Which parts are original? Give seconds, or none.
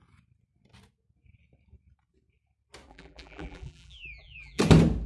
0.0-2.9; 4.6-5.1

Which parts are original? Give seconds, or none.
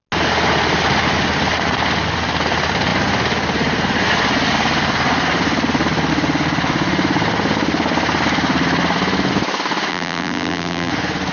0.0-9.9; 10.9-11.3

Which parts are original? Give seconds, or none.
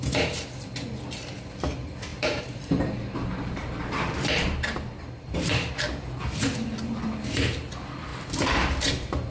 0.0-2.1; 5.7-8.1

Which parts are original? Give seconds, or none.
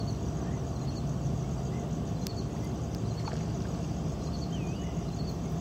0.0-5.6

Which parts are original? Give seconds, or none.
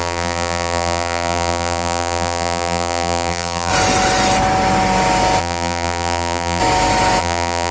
3.7-5.4; 6.6-7.2